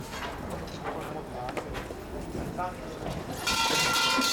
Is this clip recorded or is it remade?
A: recorded